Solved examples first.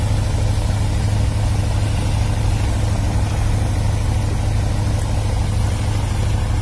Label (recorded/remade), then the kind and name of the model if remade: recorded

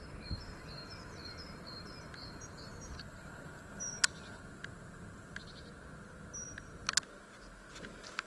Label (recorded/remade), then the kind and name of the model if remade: recorded